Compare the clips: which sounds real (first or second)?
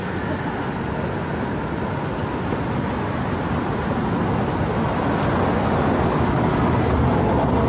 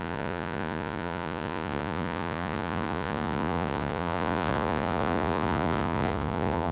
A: first